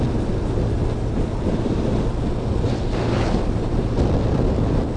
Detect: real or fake real